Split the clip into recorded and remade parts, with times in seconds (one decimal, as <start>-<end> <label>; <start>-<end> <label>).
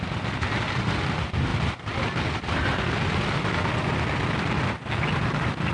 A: 0.0-5.7 recorded